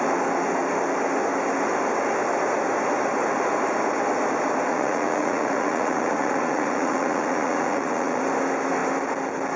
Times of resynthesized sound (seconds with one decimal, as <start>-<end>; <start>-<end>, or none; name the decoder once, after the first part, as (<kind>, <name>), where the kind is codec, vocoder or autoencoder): 4.7-8.2 (vocoder, Vocos)

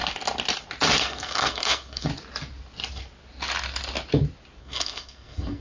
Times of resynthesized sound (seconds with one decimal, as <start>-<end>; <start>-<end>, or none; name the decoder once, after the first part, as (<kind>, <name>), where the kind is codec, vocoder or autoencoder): 1.0-2.1 (codec, SNAC); 4.6-5.6